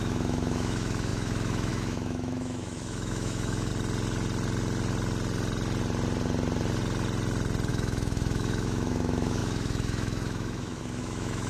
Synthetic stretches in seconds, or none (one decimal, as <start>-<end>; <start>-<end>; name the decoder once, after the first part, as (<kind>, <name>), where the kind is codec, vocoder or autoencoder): 0.0-3.7 (autoencoder, DAC-VAE); 7.7-11.5